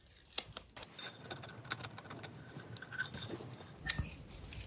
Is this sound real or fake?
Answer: real